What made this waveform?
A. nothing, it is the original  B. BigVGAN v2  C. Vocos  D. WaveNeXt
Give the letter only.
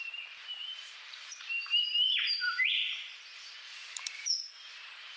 B